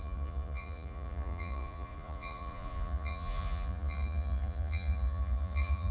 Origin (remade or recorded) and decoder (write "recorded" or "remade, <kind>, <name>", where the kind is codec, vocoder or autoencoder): remade, vocoder, Vocos